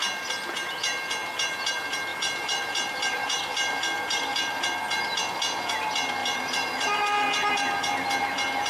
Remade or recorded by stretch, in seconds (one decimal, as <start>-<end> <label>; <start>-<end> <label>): 0.0-2.1 recorded; 2.1-5.2 remade; 5.2-6.2 recorded; 6.2-7.5 remade; 7.5-8.7 recorded